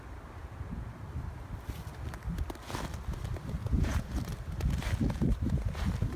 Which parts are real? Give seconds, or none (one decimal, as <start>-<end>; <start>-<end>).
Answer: 0.0-0.4; 1.0-3.6; 4.2-6.2